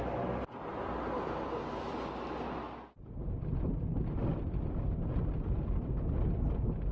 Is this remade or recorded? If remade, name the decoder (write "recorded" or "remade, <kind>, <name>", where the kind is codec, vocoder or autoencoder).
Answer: recorded